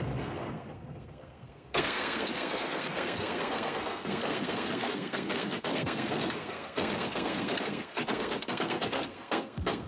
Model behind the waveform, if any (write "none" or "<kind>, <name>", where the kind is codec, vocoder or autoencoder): codec, SNAC